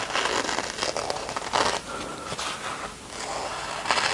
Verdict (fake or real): real